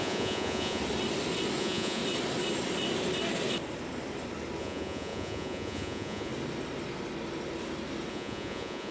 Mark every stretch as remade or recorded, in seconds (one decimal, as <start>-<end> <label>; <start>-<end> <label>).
0.0-0.8 remade; 0.8-1.6 recorded; 1.6-2.0 remade; 2.0-4.6 recorded; 4.6-6.3 remade; 6.3-8.1 recorded; 8.1-8.9 remade